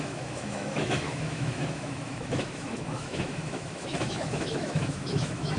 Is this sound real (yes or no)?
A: no